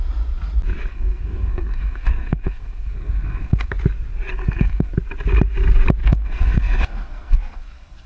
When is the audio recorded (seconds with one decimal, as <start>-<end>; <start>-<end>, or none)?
0.0-0.9; 3.7-4.4; 4.9-6.0